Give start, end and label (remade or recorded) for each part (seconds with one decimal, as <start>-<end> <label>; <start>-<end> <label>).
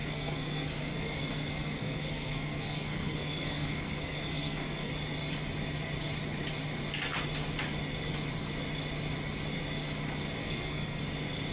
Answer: 0.0-4.9 remade; 4.9-10.4 recorded; 10.4-11.0 remade; 11.0-11.5 recorded